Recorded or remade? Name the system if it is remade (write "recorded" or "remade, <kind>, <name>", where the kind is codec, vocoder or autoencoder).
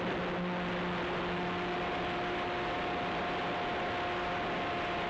recorded